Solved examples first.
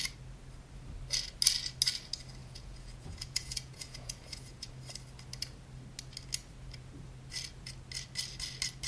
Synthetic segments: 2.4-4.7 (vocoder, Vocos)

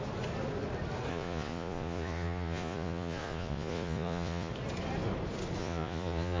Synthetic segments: 1.1-4.5 (vocoder, Vocos); 5.6-6.4

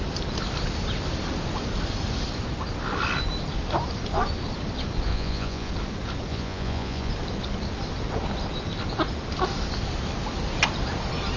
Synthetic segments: 5.1-5.7 (vocoder, Vocos); 6.3-7.1